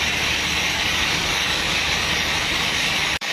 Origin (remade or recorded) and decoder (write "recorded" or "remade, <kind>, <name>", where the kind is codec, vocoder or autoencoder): remade, codec, DAC